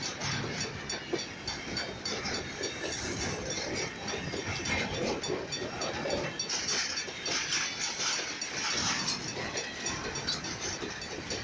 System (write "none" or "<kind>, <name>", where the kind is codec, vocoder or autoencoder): none